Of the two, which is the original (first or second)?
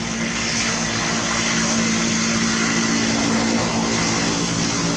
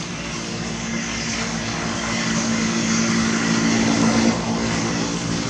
first